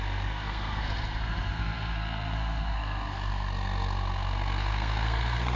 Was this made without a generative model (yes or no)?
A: no